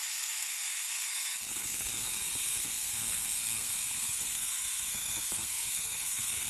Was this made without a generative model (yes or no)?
no